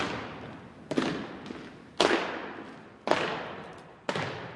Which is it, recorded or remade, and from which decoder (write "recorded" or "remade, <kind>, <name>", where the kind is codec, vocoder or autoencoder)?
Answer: recorded